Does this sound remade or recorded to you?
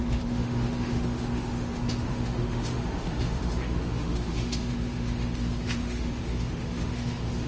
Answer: remade